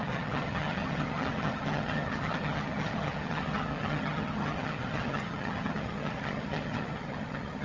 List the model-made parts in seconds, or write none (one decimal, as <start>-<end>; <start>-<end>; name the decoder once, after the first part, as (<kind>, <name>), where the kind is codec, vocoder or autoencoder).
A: 0.0-7.6 (vocoder, HiFi-GAN)